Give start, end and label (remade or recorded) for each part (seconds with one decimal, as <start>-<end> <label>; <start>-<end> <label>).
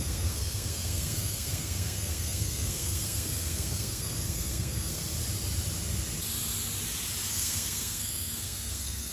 0.0-5.0 remade; 5.0-7.3 recorded; 7.3-9.1 remade